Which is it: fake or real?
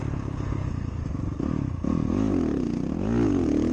real